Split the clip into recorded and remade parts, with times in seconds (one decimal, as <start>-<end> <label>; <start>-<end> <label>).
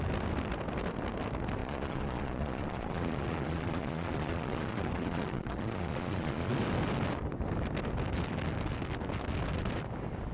0.0-1.6 recorded; 1.6-6.5 remade; 6.5-10.3 recorded